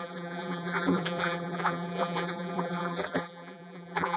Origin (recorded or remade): remade